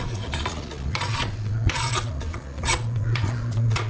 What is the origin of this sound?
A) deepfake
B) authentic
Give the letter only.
A